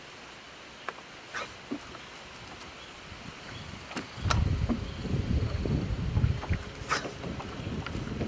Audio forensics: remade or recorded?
recorded